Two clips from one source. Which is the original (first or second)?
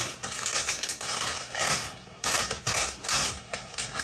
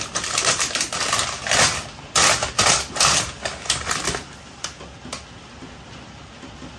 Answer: second